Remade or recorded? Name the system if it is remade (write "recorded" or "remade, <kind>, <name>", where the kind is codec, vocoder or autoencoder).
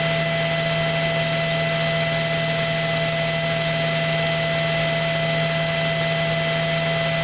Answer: recorded